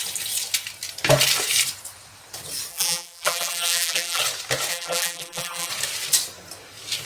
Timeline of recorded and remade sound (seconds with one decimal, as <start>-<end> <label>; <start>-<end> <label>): 0.0-2.7 recorded; 2.7-4.2 remade; 4.2-4.7 recorded; 4.7-5.7 remade; 5.7-7.1 recorded